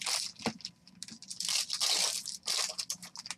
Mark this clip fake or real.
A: real